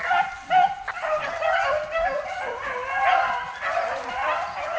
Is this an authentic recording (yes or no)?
yes